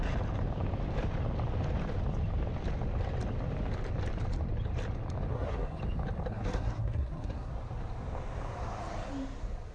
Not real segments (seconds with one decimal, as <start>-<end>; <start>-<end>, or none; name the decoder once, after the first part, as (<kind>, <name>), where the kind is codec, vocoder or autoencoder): 5.3-5.8 (codec, SNAC); 6.3-7.5